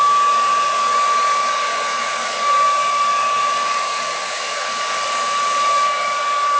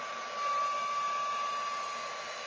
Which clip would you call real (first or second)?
second